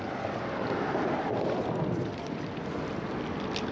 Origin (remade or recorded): recorded